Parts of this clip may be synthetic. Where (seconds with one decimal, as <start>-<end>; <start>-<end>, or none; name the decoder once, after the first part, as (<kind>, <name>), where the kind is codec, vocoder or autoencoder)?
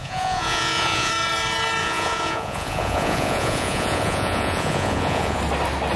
0.0-1.1 (vocoder, Vocos); 1.8-5.4